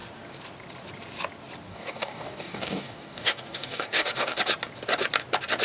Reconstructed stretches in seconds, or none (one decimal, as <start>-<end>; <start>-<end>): 1.7-4.4